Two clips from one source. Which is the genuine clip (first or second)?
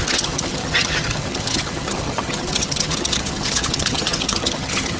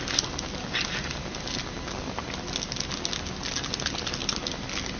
second